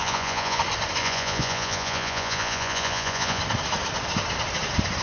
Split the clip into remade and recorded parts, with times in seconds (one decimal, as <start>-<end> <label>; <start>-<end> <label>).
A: 0.0-0.6 remade; 0.6-1.0 recorded; 1.0-3.4 remade; 3.4-5.0 recorded